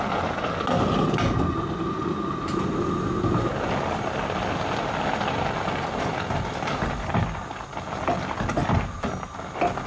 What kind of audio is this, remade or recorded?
recorded